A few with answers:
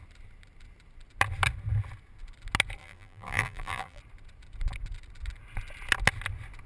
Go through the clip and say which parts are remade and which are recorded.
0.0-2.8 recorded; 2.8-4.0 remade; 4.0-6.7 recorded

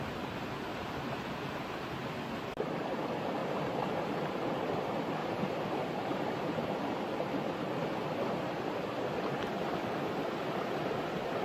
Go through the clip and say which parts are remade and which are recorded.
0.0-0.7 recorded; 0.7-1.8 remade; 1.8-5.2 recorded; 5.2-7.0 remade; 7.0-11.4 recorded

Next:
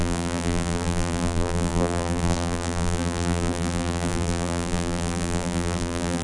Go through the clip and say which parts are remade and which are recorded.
0.0-6.2 remade